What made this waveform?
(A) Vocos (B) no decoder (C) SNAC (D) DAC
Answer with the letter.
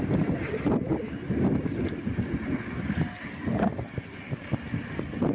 B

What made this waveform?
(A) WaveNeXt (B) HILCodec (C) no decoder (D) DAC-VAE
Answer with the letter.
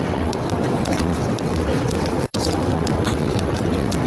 A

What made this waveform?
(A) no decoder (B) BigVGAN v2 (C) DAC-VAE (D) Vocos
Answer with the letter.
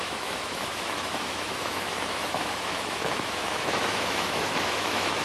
C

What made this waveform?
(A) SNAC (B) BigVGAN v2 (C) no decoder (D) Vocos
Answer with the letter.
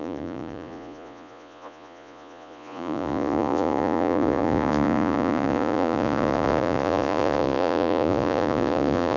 D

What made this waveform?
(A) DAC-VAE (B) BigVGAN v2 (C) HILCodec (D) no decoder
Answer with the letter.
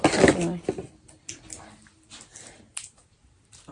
D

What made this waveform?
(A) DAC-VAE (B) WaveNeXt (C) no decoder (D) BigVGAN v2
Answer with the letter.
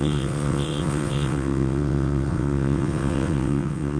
B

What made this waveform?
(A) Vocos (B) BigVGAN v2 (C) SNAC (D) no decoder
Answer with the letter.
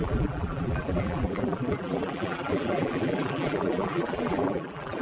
B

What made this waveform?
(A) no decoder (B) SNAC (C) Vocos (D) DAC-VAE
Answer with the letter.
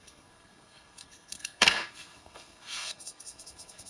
B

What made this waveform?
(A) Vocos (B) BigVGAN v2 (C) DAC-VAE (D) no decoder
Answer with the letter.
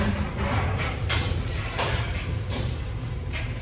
B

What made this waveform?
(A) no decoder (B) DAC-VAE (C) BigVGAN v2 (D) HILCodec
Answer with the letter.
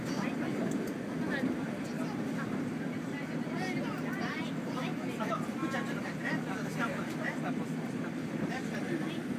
A